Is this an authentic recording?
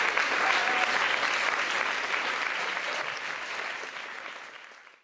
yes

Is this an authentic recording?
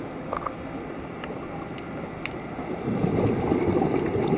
yes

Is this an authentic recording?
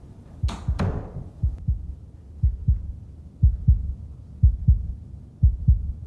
yes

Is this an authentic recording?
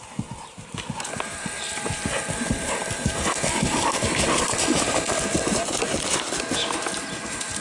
yes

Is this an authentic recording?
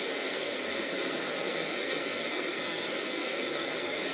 no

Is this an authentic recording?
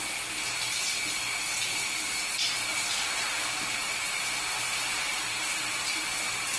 yes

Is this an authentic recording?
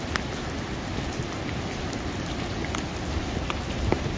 yes